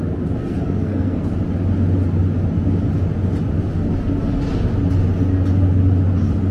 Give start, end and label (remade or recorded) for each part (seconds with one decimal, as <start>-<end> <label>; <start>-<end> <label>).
0.0-0.4 recorded; 0.4-1.3 remade; 1.3-6.5 recorded